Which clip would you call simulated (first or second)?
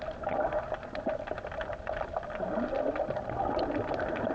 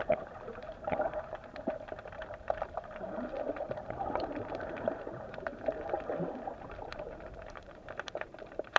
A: second